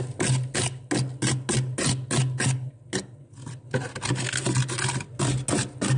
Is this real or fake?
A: real